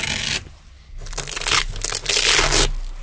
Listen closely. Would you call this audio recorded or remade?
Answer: recorded